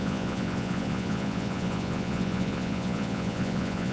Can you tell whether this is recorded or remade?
remade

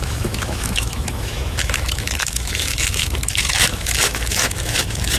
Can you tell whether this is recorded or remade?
remade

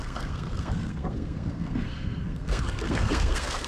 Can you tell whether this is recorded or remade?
remade